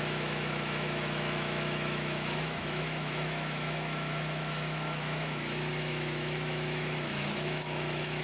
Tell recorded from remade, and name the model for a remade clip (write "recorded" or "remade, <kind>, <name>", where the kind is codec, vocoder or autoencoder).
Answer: remade, autoencoder, DAC-VAE